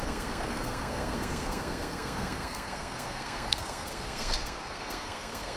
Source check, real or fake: fake